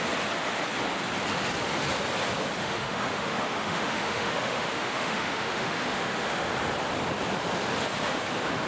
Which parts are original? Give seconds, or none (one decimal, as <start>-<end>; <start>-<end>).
0.0-2.6; 6.5-8.7